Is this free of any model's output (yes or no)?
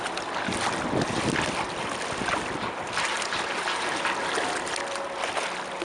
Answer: yes